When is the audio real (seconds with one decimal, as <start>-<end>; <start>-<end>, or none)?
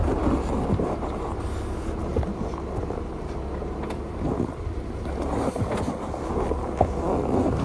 0.0-7.6